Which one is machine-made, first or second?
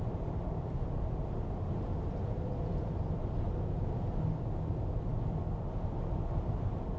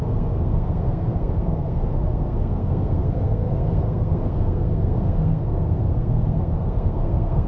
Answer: second